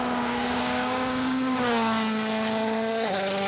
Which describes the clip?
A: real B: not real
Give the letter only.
B